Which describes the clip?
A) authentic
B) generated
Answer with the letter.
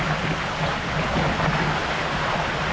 A